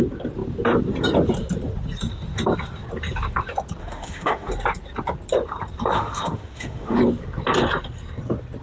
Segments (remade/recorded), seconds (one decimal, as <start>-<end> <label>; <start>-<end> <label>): 0.0-3.8 recorded; 3.8-4.5 remade; 4.5-5.9 recorded; 5.9-7.0 remade; 7.0-8.6 recorded